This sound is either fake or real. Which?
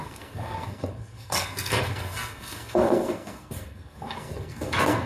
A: fake